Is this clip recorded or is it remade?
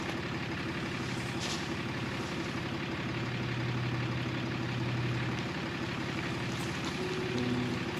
recorded